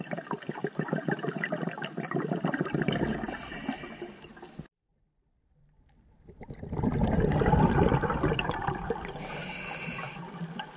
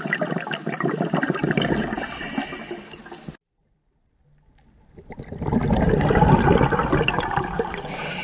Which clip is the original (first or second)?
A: second